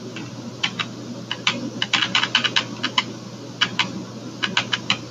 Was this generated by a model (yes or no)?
no